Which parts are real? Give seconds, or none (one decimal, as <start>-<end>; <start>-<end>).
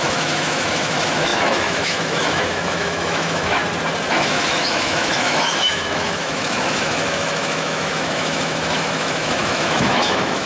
3.6-4.1